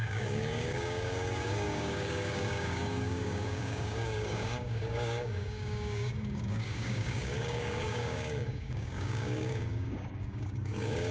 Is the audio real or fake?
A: fake